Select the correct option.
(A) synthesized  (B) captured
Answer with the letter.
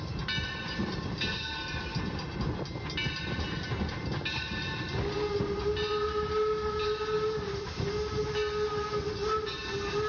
B